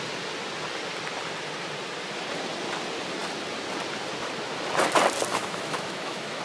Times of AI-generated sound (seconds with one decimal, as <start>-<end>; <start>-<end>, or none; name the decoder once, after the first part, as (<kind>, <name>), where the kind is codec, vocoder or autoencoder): 5.3-6.4 (autoencoder, DAC-VAE)